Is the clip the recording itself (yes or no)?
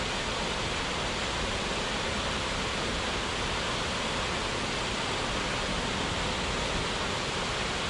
yes